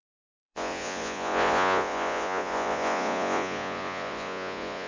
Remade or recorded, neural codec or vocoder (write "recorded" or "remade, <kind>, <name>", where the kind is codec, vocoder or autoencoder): remade, vocoder, Vocos